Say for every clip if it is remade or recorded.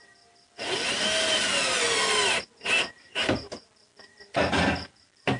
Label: recorded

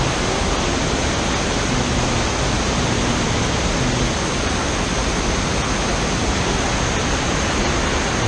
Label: recorded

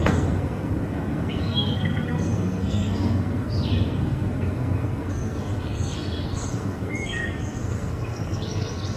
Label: remade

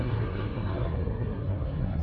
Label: remade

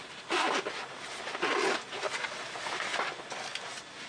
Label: recorded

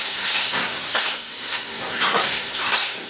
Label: remade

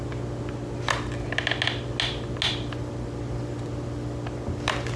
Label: recorded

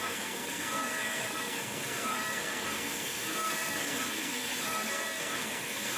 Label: remade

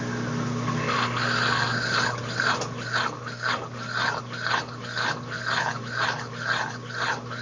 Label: recorded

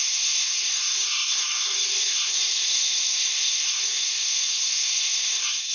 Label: remade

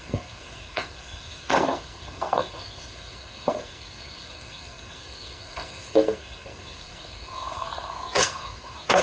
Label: remade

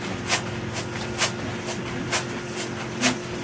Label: recorded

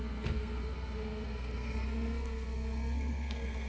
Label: remade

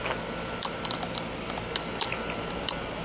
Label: recorded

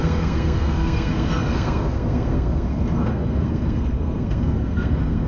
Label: remade